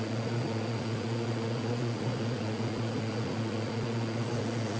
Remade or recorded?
remade